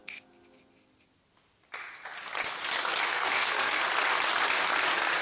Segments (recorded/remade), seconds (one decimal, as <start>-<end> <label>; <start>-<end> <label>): 0.0-3.1 recorded; 3.1-3.8 remade; 3.8-5.2 recorded